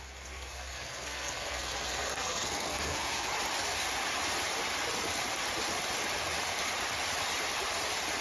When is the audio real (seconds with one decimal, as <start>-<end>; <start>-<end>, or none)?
3.3-8.2